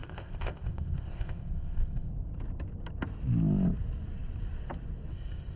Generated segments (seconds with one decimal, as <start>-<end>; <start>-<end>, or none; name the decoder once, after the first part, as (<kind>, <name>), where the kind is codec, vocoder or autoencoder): 0.0-2.1 (codec, ZipCodec); 5.1-5.6